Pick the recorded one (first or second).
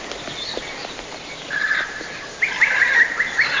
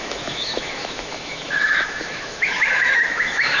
first